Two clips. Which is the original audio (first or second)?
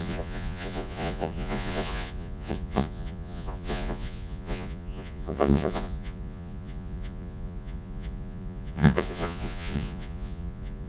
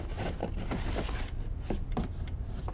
second